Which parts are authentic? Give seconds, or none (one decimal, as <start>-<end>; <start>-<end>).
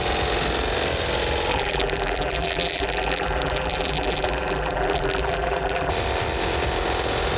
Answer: 0.0-1.5; 5.9-7.4